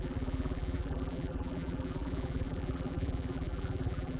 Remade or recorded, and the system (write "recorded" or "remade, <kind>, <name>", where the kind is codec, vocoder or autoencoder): remade, vocoder, BigVGAN v2